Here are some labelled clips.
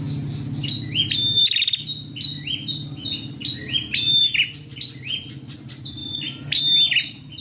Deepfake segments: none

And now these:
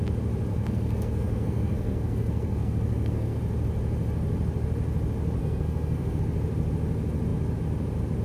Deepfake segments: 0.5-3.4; 5.4-6.2

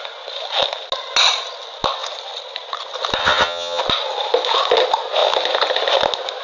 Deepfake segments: 3.2-3.8

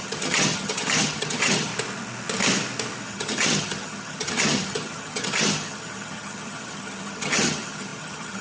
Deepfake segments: 0.0-1.7; 3.0-8.4

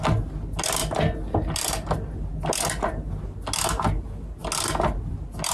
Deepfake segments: none

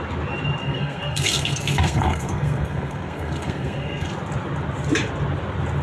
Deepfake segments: 0.6-4.1